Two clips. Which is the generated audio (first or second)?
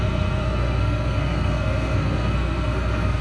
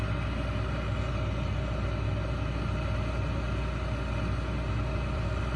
first